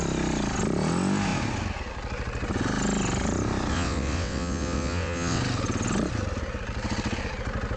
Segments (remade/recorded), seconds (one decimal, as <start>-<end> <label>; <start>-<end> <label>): 0.0-3.7 recorded; 3.7-5.4 remade; 5.4-7.8 recorded